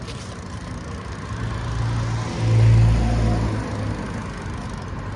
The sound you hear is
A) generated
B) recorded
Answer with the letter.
B